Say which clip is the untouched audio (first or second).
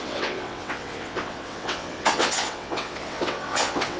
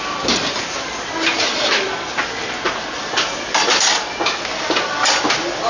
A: second